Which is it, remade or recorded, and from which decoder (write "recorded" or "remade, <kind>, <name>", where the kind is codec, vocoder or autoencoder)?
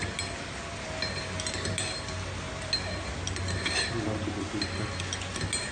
recorded